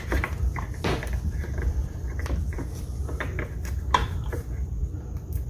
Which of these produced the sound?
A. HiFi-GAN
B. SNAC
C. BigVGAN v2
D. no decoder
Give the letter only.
C